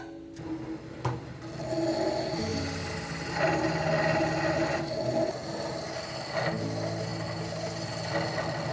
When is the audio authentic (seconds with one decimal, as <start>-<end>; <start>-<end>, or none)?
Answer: 0.0-8.7